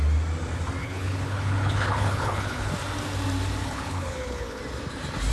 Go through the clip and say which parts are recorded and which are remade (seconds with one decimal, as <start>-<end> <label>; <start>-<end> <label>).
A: 0.0-0.8 recorded; 0.8-2.7 remade; 2.7-3.6 recorded; 3.6-4.6 remade; 4.6-5.3 recorded